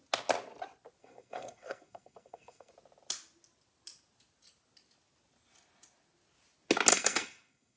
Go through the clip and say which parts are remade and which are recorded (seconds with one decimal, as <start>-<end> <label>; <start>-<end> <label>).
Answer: 0.0-1.0 recorded; 1.0-2.7 remade; 2.7-6.9 recorded; 6.9-7.8 remade

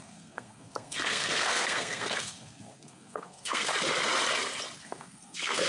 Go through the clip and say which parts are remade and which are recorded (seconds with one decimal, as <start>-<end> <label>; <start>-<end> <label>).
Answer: 0.0-3.7 remade; 3.7-4.8 recorded; 4.8-5.7 remade

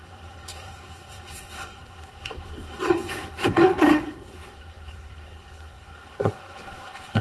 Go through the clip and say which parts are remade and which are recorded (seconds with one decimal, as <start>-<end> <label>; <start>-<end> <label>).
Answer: 0.0-7.2 remade

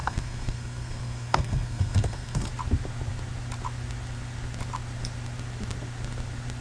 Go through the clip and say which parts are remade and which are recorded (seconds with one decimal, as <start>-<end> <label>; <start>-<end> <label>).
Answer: 0.0-2.5 remade; 2.5-6.6 recorded